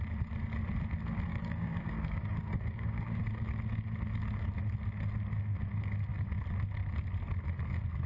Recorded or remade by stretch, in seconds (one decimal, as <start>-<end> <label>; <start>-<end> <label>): 0.0-1.3 recorded; 1.3-3.2 remade; 3.2-8.1 recorded